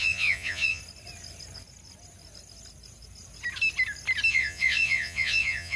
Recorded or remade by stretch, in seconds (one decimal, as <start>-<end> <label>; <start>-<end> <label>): 0.0-0.8 remade; 0.8-4.3 recorded; 4.3-5.8 remade